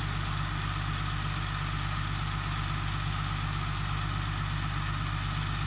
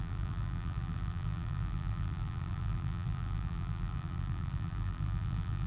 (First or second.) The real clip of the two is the first